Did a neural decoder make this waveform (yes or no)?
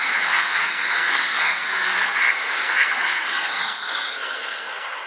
yes